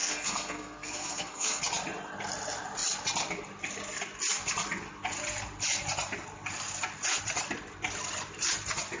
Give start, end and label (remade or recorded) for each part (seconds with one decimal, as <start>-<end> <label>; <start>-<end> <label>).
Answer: 0.0-1.6 remade; 1.6-9.0 recorded